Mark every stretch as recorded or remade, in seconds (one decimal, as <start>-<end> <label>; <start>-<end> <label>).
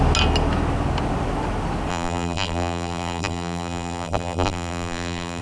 0.0-1.9 recorded; 1.9-5.4 remade